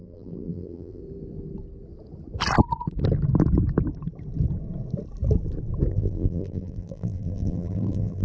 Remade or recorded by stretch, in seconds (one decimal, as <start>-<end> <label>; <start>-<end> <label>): 0.0-1.0 remade; 1.0-5.9 recorded; 5.9-8.2 remade